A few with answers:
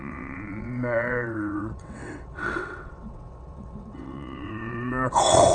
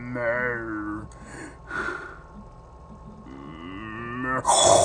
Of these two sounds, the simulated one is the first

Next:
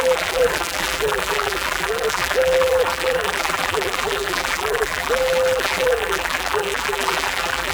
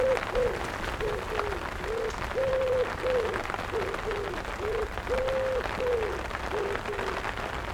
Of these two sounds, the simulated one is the first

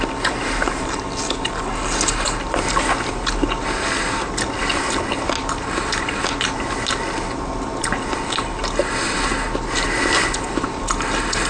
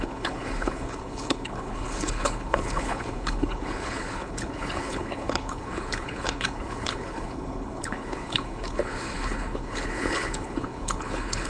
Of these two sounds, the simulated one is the second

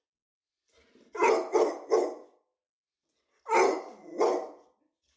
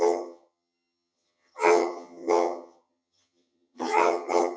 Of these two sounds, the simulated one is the second